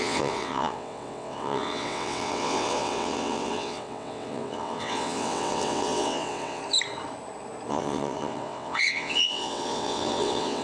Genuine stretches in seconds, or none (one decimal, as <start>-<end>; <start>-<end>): 6.6-7.7